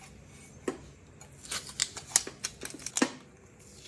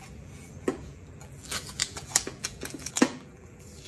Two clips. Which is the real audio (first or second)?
first